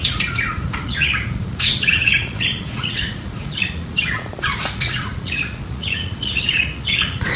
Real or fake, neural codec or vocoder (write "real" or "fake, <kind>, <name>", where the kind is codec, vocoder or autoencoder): fake, vocoder, Vocos